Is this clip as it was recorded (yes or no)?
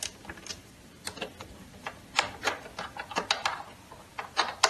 yes